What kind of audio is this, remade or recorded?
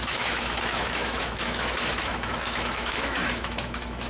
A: remade